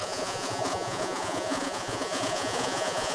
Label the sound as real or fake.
fake